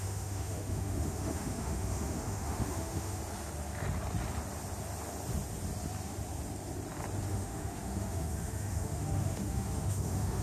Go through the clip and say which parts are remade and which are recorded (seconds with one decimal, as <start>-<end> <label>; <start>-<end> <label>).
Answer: 0.0-3.2 remade; 3.2-7.3 recorded; 7.3-10.4 remade

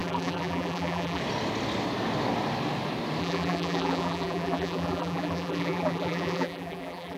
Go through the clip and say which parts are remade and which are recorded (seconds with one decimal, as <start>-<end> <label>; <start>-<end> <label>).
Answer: 0.0-1.2 remade; 1.2-3.2 recorded; 3.2-7.2 remade

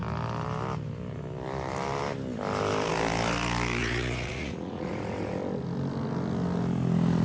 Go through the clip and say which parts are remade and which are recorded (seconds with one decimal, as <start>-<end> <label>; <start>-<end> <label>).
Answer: 0.0-3.8 recorded; 3.8-4.9 remade; 4.9-7.2 recorded

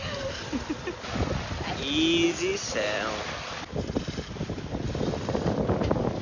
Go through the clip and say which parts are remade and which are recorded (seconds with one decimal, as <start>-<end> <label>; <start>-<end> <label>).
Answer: 0.0-2.5 recorded; 2.5-4.7 remade; 4.7-6.2 recorded

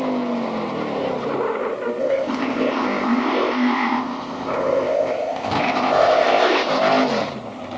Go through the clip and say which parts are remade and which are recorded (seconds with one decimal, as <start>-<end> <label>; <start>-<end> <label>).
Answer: 0.0-2.0 recorded; 2.0-6.7 remade; 6.7-7.8 recorded

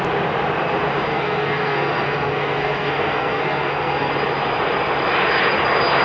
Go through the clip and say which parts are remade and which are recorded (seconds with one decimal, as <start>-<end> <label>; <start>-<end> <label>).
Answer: 0.0-1.1 recorded; 1.1-4.1 remade; 4.1-6.0 recorded

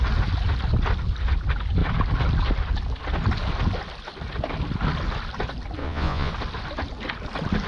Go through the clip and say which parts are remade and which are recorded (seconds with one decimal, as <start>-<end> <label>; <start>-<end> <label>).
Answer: 0.0-5.8 recorded; 5.8-6.3 remade; 6.3-7.7 recorded